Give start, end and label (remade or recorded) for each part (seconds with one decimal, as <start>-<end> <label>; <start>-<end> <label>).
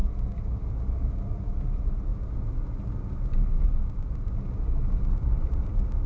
0.0-6.1 recorded